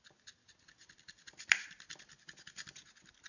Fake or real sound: real